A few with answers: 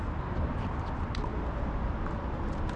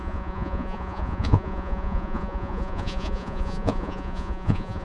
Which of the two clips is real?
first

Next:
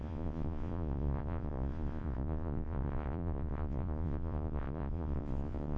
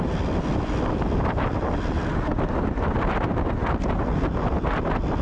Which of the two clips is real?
second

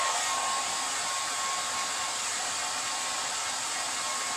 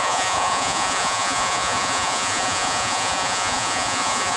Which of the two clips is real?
first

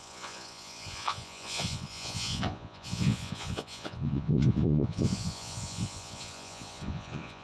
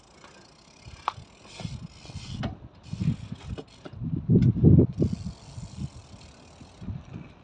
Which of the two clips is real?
second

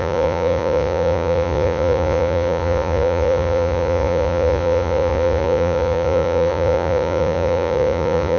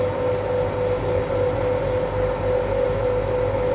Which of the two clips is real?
second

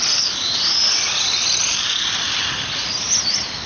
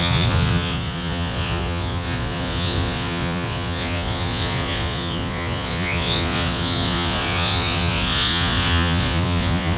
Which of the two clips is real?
first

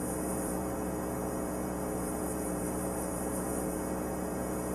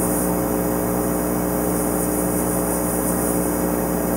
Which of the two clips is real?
second